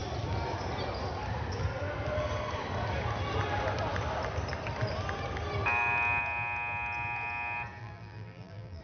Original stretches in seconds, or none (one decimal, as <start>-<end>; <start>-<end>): 0.0-7.8